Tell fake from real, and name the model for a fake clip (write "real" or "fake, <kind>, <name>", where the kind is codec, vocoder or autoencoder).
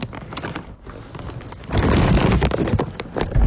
real